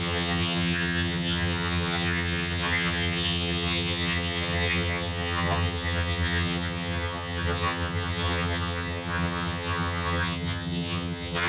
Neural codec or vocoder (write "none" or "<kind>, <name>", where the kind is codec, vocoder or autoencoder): vocoder, HiFi-GAN